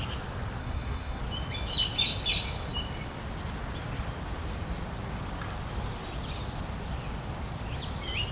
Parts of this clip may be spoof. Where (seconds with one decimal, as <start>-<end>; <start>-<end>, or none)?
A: 0.6-1.2